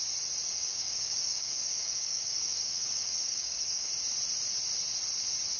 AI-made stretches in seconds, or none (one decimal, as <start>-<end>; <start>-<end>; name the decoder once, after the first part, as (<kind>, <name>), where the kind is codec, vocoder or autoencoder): 0.5-3.9 (codec, DAC)

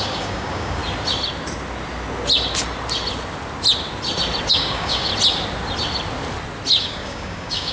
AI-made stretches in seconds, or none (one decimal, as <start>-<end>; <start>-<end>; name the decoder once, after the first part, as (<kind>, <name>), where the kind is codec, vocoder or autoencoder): 0.0-0.8 (codec, DAC); 4.5-5.1; 6.8-7.7

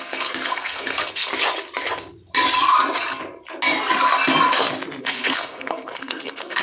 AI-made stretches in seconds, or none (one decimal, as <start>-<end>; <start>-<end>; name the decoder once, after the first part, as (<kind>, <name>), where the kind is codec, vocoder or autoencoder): 0.0-1.3 (codec, SNAC); 5.0-6.6

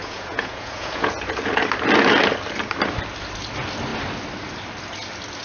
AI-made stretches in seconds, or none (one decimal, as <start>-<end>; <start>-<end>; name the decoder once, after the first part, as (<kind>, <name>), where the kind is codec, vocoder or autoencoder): 0.0-1.2 (vocoder, Vocos)